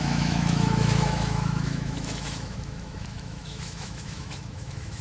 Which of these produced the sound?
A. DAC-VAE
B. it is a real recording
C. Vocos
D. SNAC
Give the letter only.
A